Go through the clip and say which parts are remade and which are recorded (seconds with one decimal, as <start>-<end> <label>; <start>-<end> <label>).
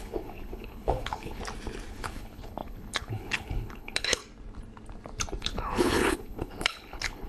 0.0-1.4 remade; 1.4-1.9 recorded; 1.9-4.2 remade; 4.2-5.4 recorded; 5.4-7.3 remade